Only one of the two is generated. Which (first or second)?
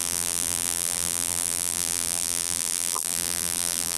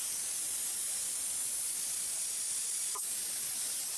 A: first